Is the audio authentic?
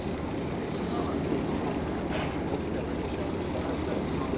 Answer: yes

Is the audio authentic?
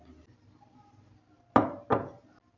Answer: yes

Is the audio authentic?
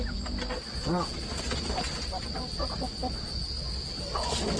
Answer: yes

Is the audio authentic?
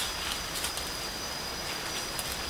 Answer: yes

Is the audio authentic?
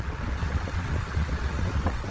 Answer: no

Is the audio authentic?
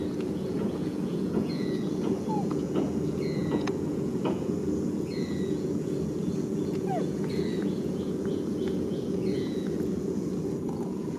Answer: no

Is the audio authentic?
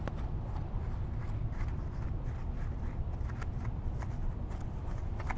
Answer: yes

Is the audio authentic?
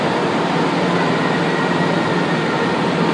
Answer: no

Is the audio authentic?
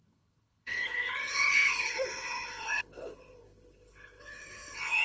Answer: no